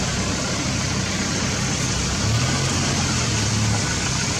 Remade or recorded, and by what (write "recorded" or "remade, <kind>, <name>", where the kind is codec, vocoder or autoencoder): recorded